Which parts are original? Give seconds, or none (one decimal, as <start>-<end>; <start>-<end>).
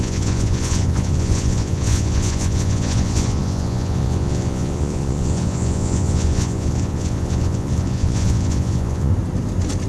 9.1-9.9